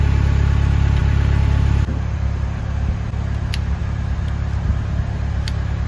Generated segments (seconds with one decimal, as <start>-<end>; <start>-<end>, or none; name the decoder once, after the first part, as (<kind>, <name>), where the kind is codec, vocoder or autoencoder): none

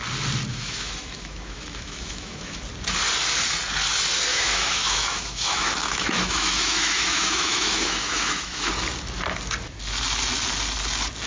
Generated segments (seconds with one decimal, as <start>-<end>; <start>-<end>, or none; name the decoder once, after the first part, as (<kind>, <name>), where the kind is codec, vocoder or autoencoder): 0.5-2.6 (autoencoder, DAC-VAE); 4.3-8.7

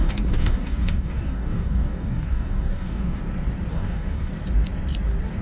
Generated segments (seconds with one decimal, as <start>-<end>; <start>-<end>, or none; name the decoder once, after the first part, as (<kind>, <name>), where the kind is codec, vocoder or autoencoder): 0.0-3.2 (codec, DAC); 3.7-4.3

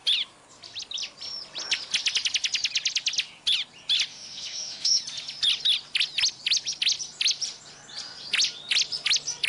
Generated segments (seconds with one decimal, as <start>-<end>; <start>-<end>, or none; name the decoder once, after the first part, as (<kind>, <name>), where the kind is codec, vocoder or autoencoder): 4.1-5.0 (autoencoder, DAC-VAE)

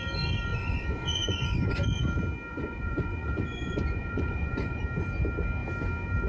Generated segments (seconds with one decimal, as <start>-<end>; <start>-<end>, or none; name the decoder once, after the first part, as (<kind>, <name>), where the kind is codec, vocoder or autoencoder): 0.5-1.8 (vocoder, Vocos); 2.5-4.8

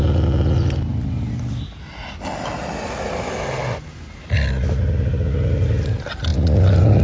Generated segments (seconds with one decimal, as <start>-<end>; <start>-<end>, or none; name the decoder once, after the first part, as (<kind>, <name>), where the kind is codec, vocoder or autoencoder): none

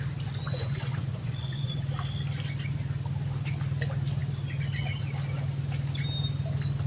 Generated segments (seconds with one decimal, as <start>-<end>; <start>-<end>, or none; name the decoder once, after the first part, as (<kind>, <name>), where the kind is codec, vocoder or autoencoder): 0.4-1.8 (vocoder, Vocos)

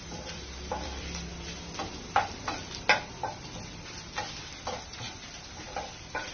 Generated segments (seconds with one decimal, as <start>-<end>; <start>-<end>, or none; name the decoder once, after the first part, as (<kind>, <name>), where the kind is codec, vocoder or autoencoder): 0.0-1.3 (vocoder, BigVGAN v2); 5.0-6.3